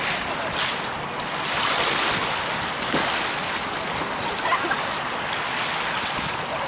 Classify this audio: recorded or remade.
recorded